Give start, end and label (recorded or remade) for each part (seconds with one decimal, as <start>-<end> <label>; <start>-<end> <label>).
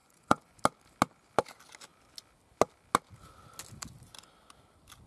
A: 0.0-0.6 remade; 0.6-5.1 recorded